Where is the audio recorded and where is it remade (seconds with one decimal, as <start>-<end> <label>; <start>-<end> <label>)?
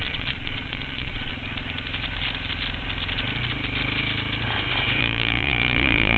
0.0-1.3 remade; 1.3-5.0 recorded; 5.0-6.2 remade